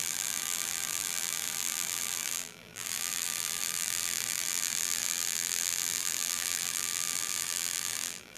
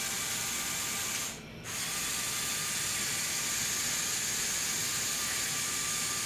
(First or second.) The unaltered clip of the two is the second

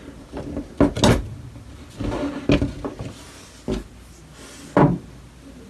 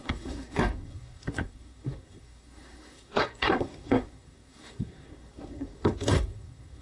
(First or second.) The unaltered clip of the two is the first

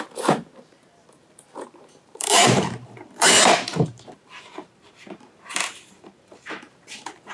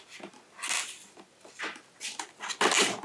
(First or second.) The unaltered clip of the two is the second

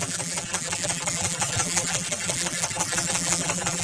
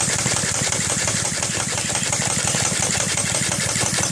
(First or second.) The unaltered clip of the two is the second